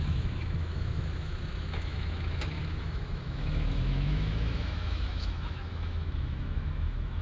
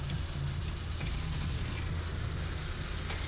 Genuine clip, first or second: second